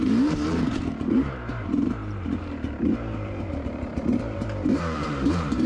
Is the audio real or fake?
fake